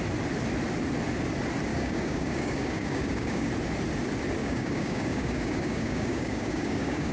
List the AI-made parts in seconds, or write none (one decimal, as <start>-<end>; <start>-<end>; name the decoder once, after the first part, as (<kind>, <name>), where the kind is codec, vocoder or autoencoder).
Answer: 1.7-3.5 (codec, DAC); 4.4-7.1